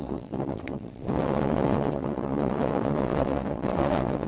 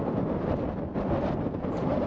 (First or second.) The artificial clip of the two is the first